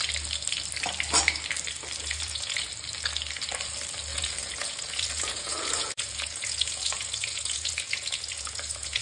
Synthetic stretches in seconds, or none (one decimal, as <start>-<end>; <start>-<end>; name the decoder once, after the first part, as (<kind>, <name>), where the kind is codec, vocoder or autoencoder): 2.0-2.7 (vocoder, Vocos); 4.1-9.0